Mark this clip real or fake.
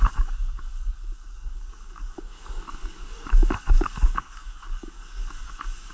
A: fake